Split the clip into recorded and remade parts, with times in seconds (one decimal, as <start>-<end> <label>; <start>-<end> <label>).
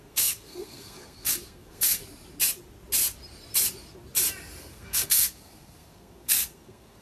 0.0-2.0 remade; 2.0-4.6 recorded; 4.6-7.0 remade